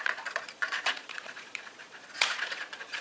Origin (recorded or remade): remade